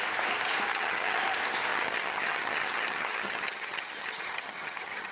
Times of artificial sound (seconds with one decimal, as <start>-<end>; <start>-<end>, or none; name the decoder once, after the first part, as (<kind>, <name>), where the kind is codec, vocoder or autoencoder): 0.7-1.2 (vocoder, HiFi-GAN); 1.7-5.1